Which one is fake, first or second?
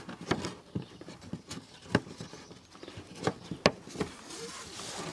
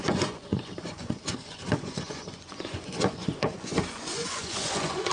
second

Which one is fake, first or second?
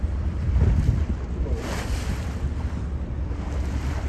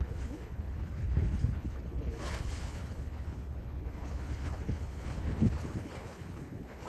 second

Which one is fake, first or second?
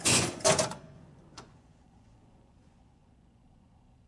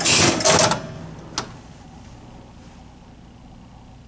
first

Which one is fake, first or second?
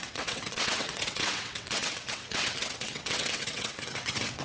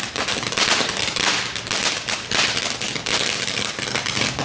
first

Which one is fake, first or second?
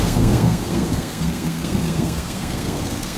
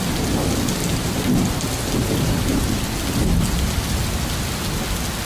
first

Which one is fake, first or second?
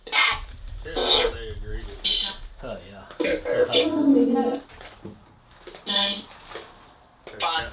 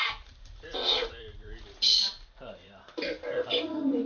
second